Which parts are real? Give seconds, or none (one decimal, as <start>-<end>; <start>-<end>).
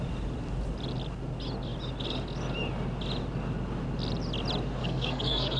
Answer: 0.0-4.8